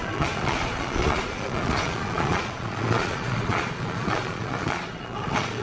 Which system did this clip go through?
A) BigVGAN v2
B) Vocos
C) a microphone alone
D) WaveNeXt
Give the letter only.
B